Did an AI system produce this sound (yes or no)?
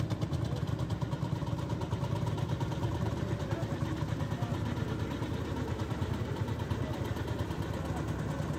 no